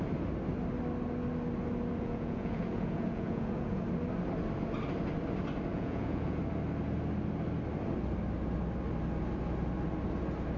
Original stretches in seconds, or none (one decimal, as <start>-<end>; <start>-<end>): 0.0-1.9; 3.8-5.7; 6.4-10.6